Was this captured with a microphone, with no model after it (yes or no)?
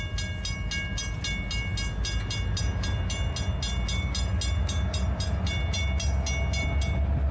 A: yes